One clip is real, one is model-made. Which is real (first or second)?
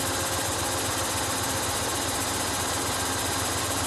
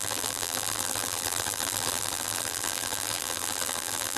first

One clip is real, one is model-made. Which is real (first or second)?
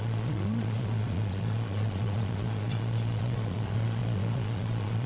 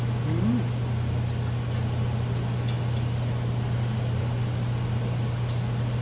second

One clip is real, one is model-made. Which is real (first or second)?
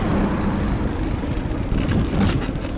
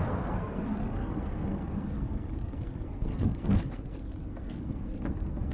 first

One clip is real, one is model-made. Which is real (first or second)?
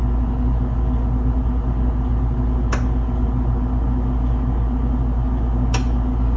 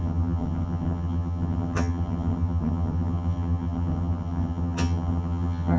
first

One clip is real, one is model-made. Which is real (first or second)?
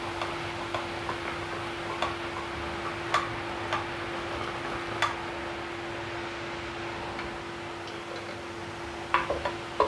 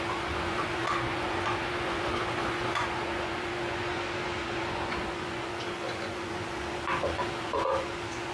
first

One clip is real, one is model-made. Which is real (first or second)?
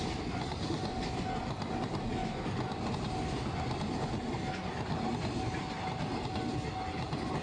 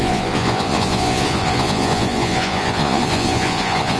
first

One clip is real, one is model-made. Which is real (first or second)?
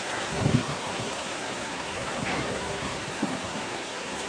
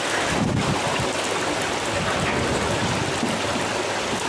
second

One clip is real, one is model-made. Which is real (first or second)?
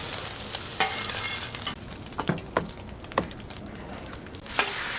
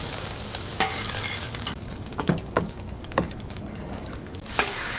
first